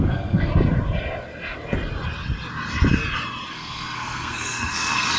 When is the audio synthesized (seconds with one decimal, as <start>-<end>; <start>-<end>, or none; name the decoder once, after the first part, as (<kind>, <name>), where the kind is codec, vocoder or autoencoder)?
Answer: 0.0-0.5 (codec, SNAC); 3.5-5.2